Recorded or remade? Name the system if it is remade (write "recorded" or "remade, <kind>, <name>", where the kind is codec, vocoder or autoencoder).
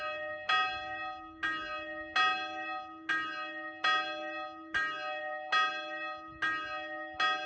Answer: recorded